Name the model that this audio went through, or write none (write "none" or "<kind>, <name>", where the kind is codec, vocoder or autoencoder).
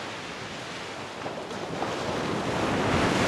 none